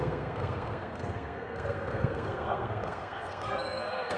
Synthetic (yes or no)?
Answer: yes